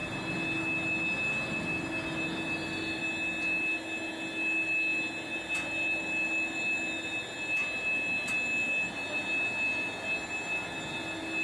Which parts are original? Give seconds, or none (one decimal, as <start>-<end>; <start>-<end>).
0.0-11.4